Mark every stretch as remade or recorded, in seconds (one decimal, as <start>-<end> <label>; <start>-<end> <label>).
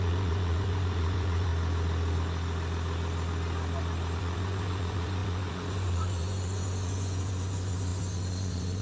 0.0-1.5 remade; 1.5-4.2 recorded; 4.2-8.8 remade